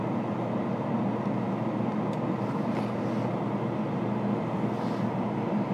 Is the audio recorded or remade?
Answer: recorded